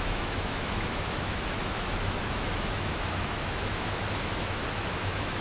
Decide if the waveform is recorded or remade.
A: remade